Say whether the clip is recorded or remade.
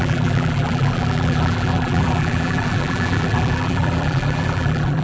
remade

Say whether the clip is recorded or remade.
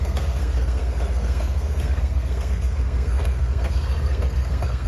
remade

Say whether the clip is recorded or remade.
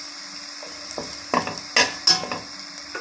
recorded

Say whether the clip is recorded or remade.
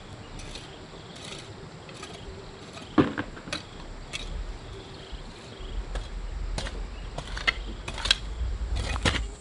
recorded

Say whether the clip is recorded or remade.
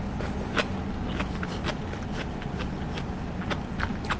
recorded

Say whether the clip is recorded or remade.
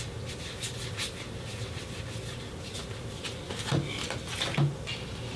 recorded